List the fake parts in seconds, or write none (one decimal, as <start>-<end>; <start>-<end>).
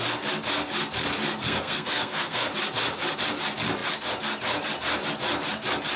1.4-2.5